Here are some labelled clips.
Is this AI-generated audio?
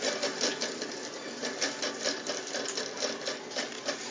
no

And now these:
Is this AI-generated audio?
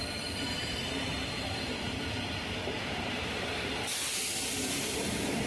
yes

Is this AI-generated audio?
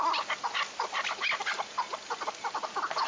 no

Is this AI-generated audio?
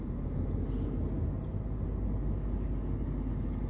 no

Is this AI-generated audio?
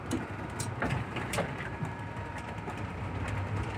yes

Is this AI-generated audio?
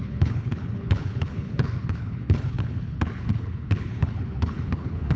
yes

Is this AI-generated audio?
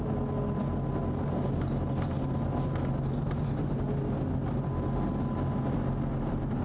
no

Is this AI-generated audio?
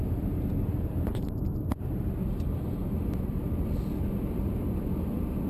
no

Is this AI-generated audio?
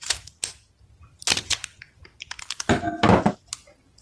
no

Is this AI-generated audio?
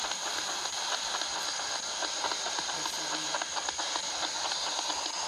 no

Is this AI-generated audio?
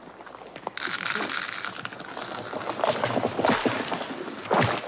no